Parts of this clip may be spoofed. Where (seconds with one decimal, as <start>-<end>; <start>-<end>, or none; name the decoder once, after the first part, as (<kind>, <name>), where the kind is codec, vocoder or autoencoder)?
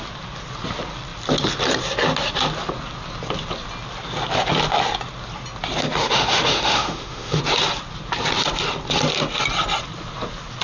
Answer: 6.0-7.4 (autoencoder, DAC-VAE)